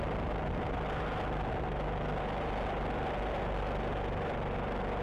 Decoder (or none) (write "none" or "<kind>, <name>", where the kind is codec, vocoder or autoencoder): none